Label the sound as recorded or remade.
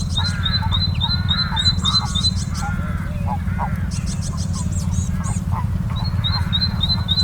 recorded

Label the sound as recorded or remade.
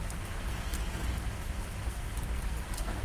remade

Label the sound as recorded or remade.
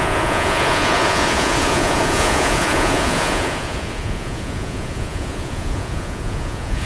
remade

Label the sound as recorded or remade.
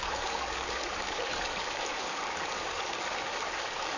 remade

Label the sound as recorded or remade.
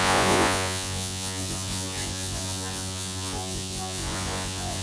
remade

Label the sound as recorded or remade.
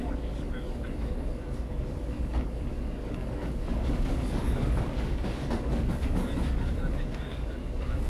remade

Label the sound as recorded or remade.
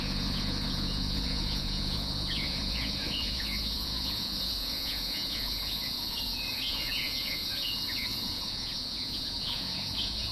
remade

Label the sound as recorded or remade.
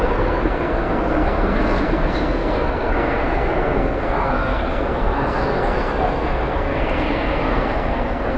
remade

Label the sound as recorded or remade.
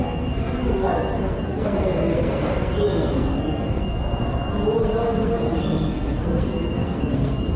remade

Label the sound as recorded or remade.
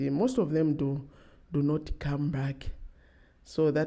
recorded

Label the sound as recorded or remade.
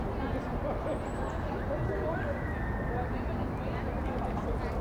recorded